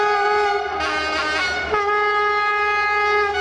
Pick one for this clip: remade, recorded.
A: recorded